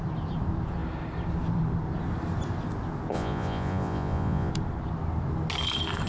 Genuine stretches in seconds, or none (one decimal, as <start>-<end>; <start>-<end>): 0.0-3.1; 4.5-6.1